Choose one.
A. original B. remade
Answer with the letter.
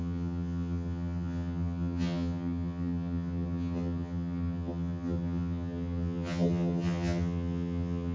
B